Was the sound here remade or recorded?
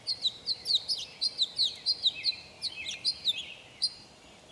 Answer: recorded